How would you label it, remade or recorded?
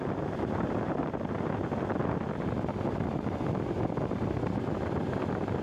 recorded